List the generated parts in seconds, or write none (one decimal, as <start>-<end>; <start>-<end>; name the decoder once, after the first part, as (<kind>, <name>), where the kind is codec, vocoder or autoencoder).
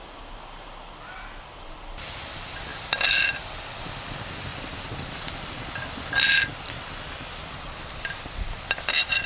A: none